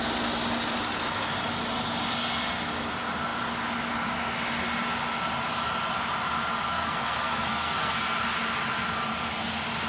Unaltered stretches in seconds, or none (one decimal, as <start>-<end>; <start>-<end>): 0.0-6.7; 7.9-9.9